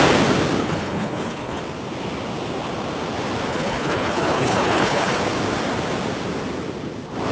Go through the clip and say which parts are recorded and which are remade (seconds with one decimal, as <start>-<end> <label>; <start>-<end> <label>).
0.0-0.6 recorded; 0.6-1.6 remade; 1.6-3.5 recorded; 3.5-5.2 remade; 5.2-7.3 recorded